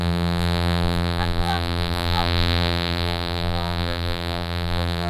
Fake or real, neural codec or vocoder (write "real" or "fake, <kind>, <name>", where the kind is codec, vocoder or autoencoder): fake, vocoder, BigVGAN v2